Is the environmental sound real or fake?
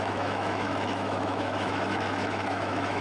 fake